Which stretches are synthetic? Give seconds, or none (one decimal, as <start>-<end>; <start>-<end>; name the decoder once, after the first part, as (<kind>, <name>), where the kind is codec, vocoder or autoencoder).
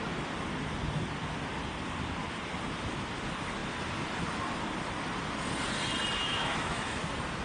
6.2-7.0 (autoencoder, DAC-VAE)